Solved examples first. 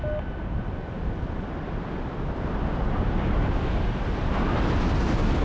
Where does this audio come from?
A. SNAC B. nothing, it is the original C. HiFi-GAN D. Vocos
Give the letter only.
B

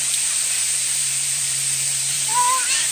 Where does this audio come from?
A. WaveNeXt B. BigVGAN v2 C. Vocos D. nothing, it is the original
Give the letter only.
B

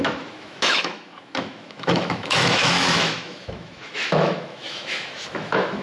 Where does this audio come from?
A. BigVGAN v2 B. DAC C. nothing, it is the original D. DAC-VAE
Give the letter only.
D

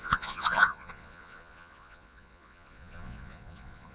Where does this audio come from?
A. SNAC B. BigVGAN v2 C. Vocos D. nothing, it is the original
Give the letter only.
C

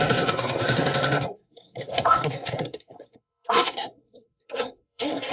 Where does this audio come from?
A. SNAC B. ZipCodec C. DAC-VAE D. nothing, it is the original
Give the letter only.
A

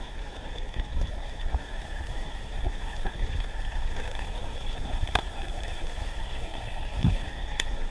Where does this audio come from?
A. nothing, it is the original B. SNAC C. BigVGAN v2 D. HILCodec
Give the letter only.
B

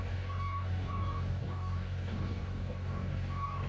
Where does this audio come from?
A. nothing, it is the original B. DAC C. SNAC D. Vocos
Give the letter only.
B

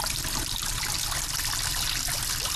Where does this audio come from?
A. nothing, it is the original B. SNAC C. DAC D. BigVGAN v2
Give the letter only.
A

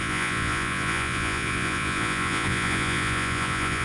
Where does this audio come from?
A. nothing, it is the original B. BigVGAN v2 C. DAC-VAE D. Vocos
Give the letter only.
D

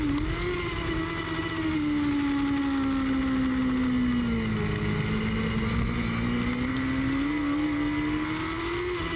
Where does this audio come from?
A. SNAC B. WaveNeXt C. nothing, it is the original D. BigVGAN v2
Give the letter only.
C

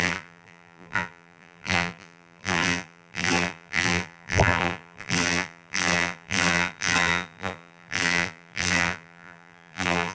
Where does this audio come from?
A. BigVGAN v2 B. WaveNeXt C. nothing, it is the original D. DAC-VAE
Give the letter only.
A